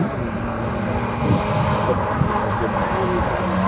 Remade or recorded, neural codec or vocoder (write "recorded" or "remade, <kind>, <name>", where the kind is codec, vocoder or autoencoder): recorded